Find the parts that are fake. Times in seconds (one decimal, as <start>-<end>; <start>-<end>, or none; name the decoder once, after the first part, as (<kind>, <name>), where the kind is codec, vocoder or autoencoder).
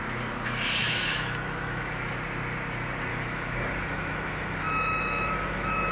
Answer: 0.8-2.1 (autoencoder, DAC-VAE); 3.1-5.9